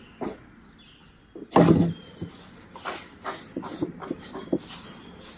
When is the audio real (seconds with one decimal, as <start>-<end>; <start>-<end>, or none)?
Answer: 0.0-5.4